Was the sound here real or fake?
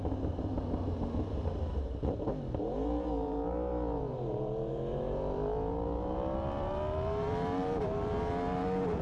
fake